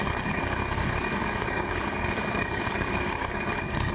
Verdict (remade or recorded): remade